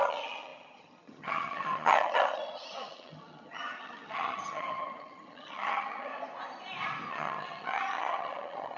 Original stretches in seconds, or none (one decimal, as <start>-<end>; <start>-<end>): 6.1-7.1